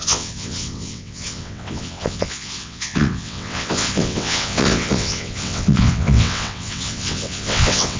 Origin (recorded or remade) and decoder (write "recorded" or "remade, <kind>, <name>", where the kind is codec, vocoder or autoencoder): remade, vocoder, WaveNeXt